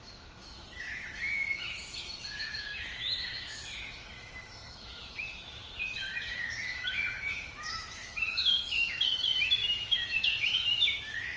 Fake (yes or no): yes